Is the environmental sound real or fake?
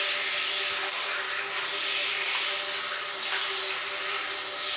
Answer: real